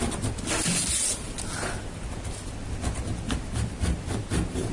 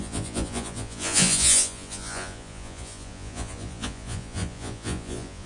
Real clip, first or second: first